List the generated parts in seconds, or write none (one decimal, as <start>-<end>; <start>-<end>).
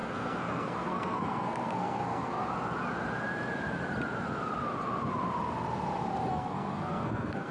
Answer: 0.0-2.4; 6.3-7.5